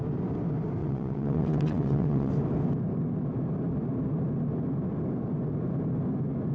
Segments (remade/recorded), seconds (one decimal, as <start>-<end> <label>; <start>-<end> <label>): 0.0-0.8 recorded; 0.8-2.3 remade; 2.3-6.5 recorded